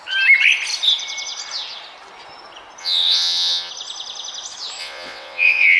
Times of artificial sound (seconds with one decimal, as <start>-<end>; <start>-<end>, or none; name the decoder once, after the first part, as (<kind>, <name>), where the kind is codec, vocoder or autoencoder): 2.8-3.7 (vocoder, WaveNeXt); 4.8-5.8